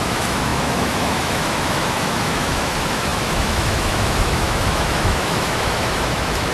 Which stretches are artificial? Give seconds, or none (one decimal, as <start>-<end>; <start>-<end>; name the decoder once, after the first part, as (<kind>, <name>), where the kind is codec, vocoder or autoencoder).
0.0-6.5 (autoencoder, DAC-VAE)